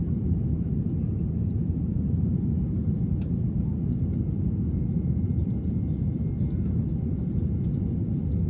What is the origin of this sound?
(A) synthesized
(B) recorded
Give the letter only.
B